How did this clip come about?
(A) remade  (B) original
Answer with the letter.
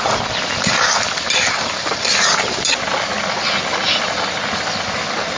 B